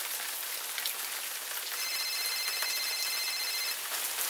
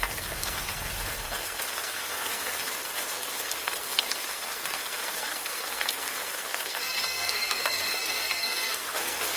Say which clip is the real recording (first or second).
first